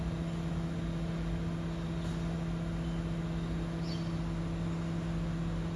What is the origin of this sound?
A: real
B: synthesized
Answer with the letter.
A